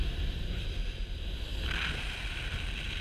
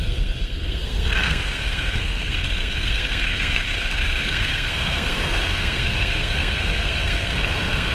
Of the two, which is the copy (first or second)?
second